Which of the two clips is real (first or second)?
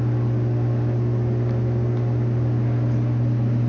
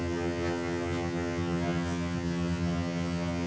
first